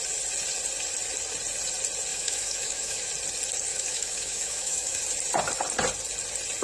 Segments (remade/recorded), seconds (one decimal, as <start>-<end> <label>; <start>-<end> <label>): 0.0-2.1 recorded; 2.1-3.1 remade; 3.1-3.7 recorded; 3.7-5.0 remade; 5.0-6.6 recorded